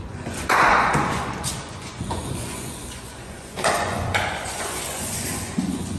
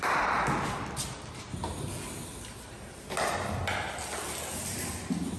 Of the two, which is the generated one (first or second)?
first